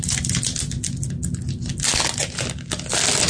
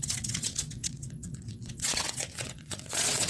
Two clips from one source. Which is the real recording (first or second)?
first